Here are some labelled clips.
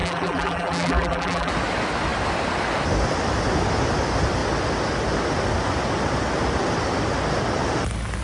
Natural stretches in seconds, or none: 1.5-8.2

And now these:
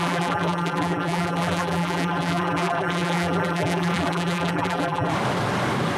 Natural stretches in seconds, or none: 5.1-6.0

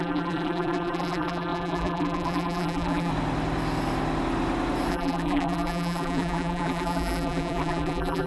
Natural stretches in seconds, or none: 3.1-4.9

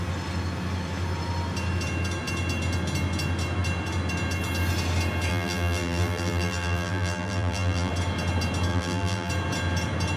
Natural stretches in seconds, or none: 0.0-5.3; 7.9-8.7; 9.3-10.2

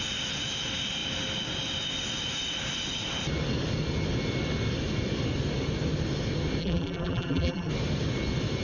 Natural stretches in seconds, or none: 0.0-6.6; 7.7-8.6